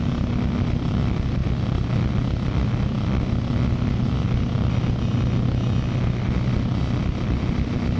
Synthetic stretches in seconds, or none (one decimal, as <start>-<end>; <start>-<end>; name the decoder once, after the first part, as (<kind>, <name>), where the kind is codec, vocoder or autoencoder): none